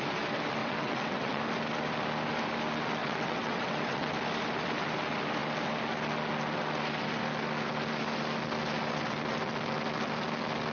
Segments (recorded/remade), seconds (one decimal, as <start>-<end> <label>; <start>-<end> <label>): 0.0-0.6 recorded; 0.6-1.4 remade; 1.4-3.0 recorded; 3.0-4.1 remade; 4.1-10.7 recorded